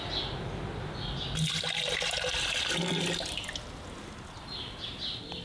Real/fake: real